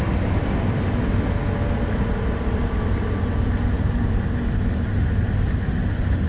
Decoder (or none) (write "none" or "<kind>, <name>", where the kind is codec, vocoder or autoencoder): none